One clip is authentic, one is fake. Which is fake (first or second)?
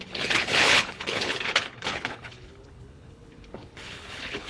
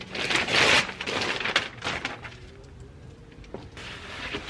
first